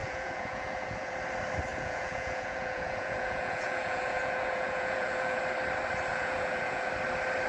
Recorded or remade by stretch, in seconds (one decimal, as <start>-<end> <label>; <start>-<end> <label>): 0.0-1.1 remade; 1.1-1.7 recorded; 1.7-5.4 remade; 5.4-6.1 recorded; 6.1-6.9 remade; 6.9-7.5 recorded